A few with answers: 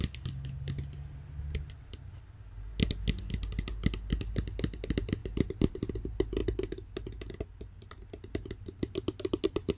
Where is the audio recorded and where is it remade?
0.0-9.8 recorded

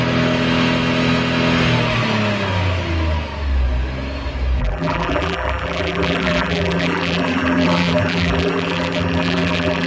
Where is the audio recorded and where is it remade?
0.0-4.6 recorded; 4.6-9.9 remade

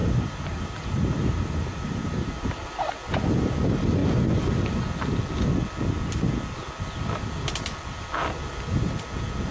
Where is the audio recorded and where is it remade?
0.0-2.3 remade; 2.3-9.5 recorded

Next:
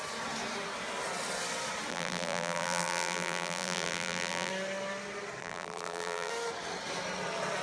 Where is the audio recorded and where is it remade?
0.0-1.9 recorded; 1.9-4.5 remade; 4.5-5.4 recorded; 5.4-6.3 remade; 6.3-7.6 recorded

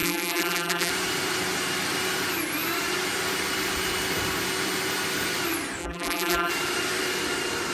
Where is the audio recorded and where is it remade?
0.0-0.9 remade; 0.9-5.8 recorded; 5.8-6.5 remade; 6.5-7.7 recorded

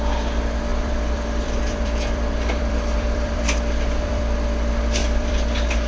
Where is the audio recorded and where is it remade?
0.0-0.7 recorded; 0.7-4.2 remade; 4.2-5.0 recorded; 5.0-5.9 remade